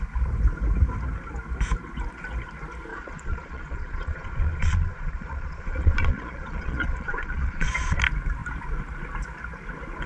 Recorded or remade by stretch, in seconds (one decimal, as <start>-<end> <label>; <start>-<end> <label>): 0.0-2.9 recorded; 2.9-8.0 remade; 8.0-10.1 recorded